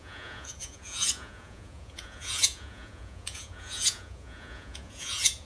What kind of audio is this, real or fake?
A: fake